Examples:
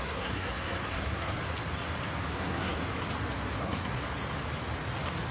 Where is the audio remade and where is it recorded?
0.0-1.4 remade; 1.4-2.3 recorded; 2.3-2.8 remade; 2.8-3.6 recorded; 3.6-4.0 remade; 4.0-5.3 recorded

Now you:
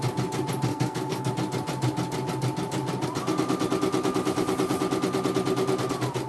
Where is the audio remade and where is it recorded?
0.0-0.7 recorded; 0.7-1.3 remade; 1.3-6.3 recorded

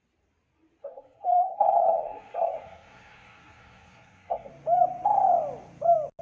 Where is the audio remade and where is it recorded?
0.0-0.8 recorded; 0.8-4.5 remade; 4.5-6.2 recorded